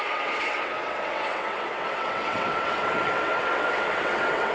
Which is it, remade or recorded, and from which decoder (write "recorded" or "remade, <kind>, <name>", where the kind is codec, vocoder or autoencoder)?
remade, vocoder, WaveNeXt